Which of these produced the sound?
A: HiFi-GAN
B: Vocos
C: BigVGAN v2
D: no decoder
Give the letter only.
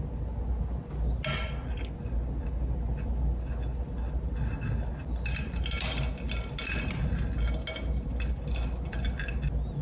D